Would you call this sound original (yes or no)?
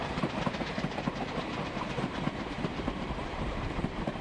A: no